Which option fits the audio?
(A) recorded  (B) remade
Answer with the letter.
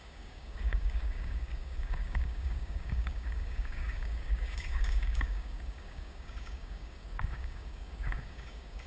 B